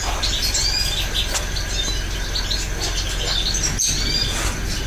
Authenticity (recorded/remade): recorded